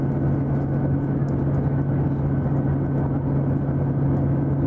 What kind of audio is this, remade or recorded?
recorded